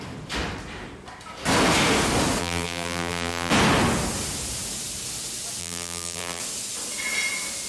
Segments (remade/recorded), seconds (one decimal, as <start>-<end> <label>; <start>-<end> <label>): 0.0-2.4 recorded; 2.4-3.5 remade; 3.5-5.6 recorded; 5.6-6.4 remade; 6.4-7.7 recorded